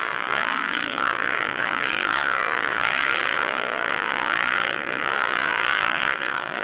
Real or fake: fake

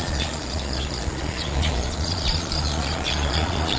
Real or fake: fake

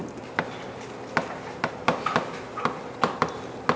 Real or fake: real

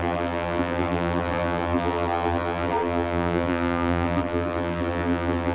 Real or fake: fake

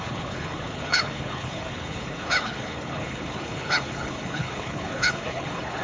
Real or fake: fake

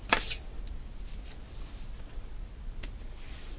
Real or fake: real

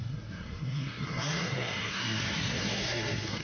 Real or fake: fake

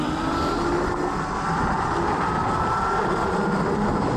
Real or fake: fake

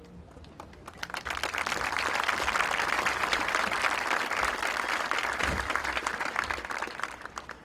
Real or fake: real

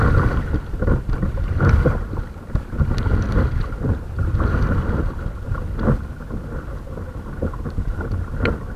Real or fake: real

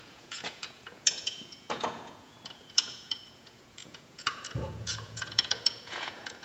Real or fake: fake